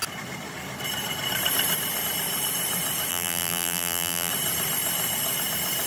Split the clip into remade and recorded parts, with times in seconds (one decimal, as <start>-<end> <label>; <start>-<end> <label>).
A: 0.0-3.1 recorded; 3.1-4.3 remade; 4.3-5.9 recorded